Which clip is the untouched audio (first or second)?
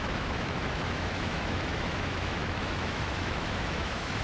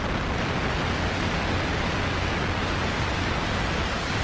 second